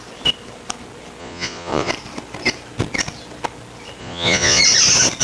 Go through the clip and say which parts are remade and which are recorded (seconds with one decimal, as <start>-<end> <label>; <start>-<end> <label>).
0.0-1.2 recorded; 1.2-1.9 remade; 1.9-4.0 recorded; 4.0-4.6 remade; 4.6-5.2 recorded

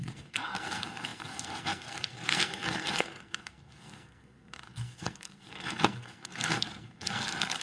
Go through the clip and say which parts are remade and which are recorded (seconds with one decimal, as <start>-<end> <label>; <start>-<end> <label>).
0.0-7.6 remade

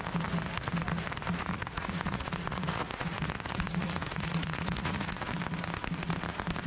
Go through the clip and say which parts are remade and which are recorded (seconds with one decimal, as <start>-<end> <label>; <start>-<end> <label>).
0.0-1.3 recorded; 1.3-5.3 remade; 5.3-6.7 recorded

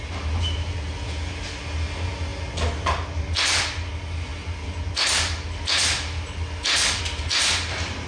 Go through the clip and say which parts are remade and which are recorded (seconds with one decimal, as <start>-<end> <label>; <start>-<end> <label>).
0.0-8.1 recorded

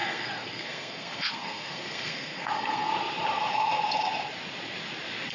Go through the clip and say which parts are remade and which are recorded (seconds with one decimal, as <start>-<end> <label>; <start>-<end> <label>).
0.0-2.9 remade; 2.9-5.3 recorded